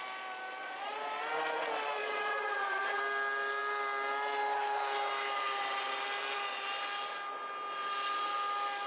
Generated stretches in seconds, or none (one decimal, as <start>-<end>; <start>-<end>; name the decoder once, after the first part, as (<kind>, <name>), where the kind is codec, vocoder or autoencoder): 0.6-1.2 (vocoder, Vocos); 2.0-3.0